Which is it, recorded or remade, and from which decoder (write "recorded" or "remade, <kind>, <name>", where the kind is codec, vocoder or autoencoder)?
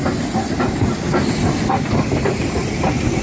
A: recorded